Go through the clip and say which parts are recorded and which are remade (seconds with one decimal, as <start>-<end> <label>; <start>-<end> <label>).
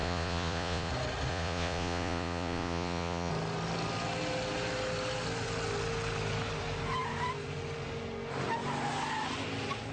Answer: 0.0-0.9 remade; 0.9-1.3 recorded; 1.3-3.3 remade; 3.3-9.9 recorded